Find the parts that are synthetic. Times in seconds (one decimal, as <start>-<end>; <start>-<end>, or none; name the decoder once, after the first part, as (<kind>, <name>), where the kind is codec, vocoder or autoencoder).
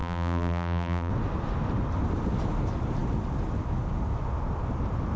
0.0-1.1 (vocoder, BigVGAN v2)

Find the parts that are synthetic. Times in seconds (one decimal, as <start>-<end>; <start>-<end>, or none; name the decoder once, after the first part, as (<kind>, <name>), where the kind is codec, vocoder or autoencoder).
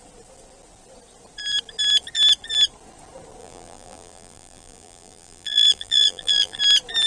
3.4-6.6 (vocoder, BigVGAN v2)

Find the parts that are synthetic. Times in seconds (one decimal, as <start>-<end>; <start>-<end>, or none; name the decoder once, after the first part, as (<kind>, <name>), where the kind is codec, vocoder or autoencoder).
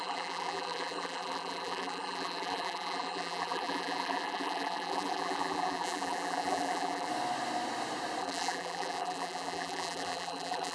0.0-7.1 (vocoder, BigVGAN v2); 8.2-10.7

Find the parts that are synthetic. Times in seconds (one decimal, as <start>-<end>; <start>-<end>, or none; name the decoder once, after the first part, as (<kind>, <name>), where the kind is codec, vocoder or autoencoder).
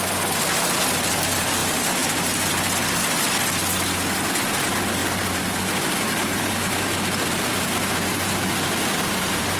1.6-2.5 (vocoder, BigVGAN v2); 5.0-9.6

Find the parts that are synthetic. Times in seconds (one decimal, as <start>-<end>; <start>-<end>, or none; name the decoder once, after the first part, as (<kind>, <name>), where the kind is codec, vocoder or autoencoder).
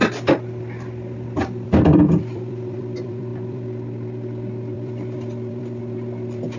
0.0-6.6 (vocoder, BigVGAN v2)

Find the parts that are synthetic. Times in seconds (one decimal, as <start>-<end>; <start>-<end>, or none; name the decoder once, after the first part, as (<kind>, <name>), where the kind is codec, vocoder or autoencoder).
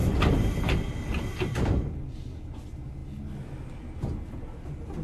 0.0-0.9 (vocoder, BigVGAN v2)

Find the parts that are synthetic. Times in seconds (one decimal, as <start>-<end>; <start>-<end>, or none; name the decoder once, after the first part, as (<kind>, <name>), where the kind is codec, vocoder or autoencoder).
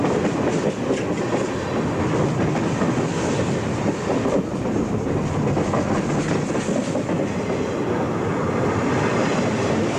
4.1-5.2 (vocoder, BigVGAN v2)